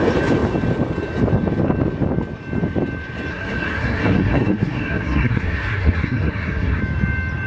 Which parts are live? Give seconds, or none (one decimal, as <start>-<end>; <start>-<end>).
0.0-3.3; 6.8-7.5